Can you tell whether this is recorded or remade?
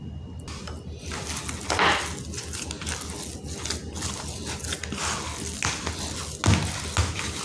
recorded